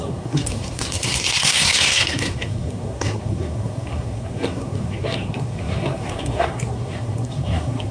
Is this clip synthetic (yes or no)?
yes